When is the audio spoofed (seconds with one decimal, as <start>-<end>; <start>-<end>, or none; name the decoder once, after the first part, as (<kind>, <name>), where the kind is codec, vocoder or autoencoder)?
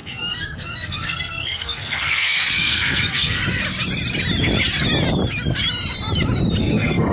0.0-3.4 (codec, SNAC); 6.6-7.1